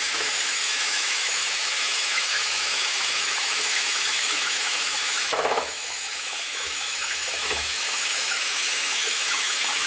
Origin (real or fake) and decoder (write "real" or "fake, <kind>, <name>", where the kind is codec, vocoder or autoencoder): fake, autoencoder, DAC-VAE